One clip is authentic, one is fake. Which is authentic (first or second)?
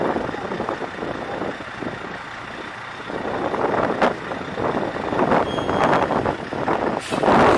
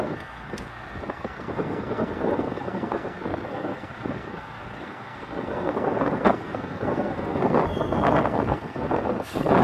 first